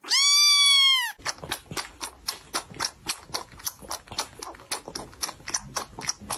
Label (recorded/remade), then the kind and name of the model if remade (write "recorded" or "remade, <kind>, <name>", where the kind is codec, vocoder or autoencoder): recorded